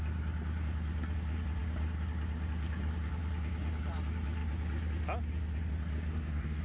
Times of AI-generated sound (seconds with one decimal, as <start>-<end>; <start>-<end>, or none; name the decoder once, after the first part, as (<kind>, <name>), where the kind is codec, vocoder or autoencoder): 6.1-6.6 (codec, SNAC)